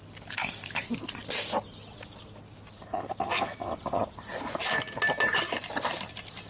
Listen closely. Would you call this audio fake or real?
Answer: real